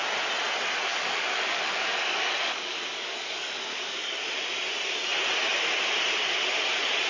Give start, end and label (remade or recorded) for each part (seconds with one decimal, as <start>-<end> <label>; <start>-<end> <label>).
0.0-0.9 recorded; 0.9-4.2 remade; 4.2-7.1 recorded